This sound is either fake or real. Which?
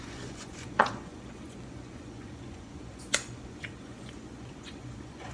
fake